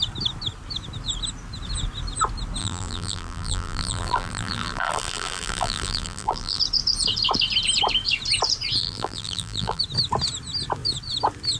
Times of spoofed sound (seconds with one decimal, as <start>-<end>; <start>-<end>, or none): 2.6-6.6; 8.8-9.8